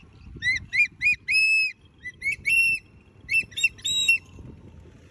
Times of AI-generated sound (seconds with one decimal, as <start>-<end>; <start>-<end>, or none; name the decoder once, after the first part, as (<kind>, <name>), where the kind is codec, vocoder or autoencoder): 1.7-4.6 (vocoder, BigVGAN v2)